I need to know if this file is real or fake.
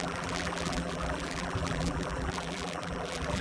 fake